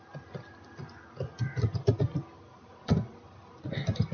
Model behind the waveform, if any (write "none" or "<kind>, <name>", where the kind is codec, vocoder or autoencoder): none